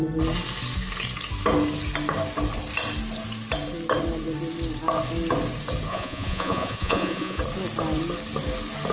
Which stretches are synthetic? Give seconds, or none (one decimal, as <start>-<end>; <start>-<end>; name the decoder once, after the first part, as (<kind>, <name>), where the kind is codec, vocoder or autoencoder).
5.9-7.4 (vocoder, Vocos)